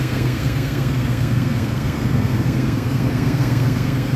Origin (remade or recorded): remade